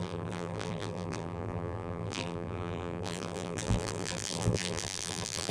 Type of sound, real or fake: fake